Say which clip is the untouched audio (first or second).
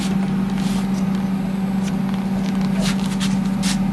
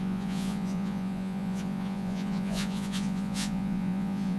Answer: first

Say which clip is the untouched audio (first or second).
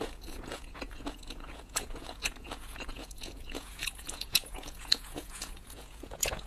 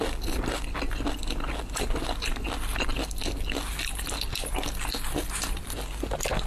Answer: second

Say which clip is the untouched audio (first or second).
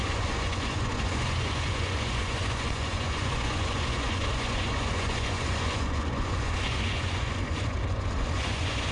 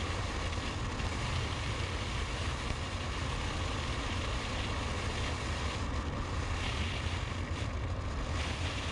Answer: second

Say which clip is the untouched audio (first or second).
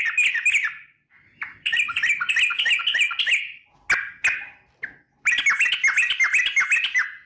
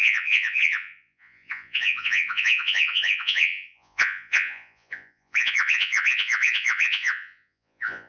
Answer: first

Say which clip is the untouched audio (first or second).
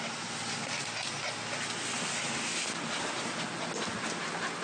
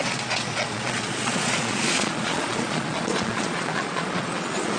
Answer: first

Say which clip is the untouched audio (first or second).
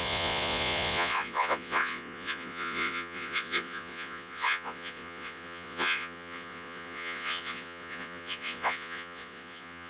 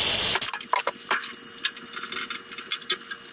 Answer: second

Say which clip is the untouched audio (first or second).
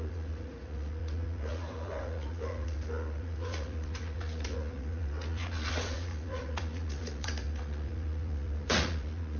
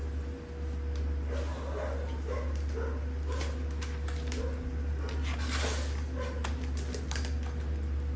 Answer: second